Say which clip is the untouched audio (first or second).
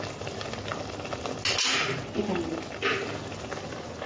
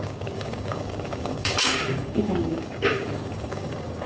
first